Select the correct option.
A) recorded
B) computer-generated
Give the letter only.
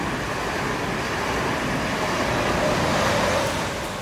A